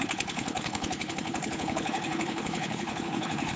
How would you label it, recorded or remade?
remade